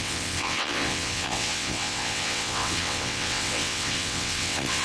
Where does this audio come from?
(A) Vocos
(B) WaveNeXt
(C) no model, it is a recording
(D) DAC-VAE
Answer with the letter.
B